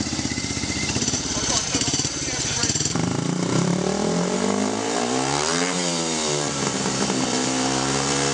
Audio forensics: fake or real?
fake